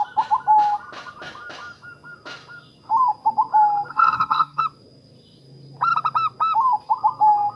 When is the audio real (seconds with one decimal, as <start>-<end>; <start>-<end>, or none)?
0.0-3.9; 4.6-7.6